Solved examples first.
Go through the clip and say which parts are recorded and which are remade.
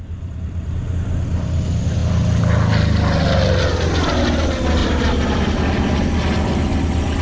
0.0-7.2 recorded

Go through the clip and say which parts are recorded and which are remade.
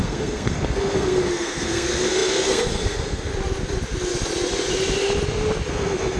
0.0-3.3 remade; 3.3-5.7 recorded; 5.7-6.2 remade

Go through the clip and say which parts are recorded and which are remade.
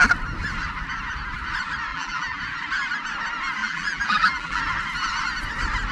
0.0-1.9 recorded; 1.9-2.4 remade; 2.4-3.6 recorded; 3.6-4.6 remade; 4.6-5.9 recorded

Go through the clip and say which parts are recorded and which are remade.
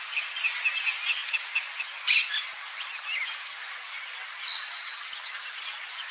0.0-6.1 recorded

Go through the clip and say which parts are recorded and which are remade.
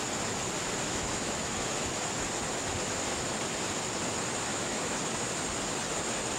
0.0-0.9 recorded; 0.9-2.1 remade; 2.1-4.5 recorded; 4.5-5.3 remade; 5.3-6.4 recorded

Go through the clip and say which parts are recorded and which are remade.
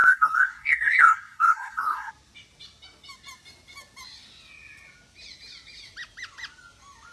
0.0-2.1 remade; 2.1-7.1 recorded